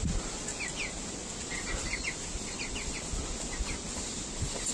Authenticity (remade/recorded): recorded